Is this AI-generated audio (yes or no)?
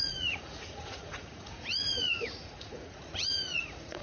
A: yes